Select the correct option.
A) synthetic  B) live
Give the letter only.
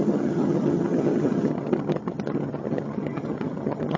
A